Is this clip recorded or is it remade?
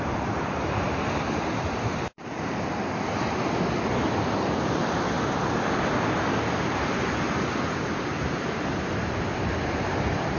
recorded